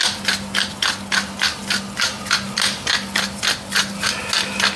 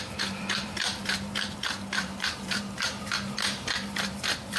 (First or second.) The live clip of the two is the first